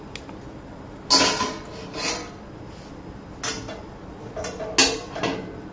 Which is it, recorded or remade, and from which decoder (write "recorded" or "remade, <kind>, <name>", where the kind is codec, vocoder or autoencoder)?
recorded